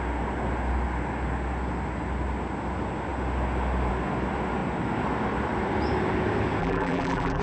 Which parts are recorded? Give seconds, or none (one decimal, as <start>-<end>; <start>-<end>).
0.0-6.6